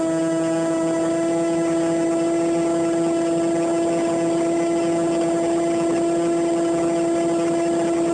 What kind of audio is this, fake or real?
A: real